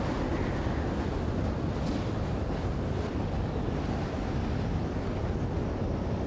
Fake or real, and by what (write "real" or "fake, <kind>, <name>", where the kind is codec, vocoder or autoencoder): real